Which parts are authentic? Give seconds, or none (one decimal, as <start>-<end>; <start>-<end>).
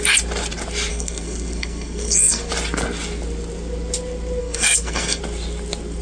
0.0-0.9; 2.5-4.4; 5.2-6.0